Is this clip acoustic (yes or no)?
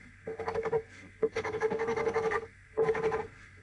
no